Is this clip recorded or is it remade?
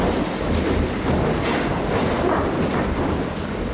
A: recorded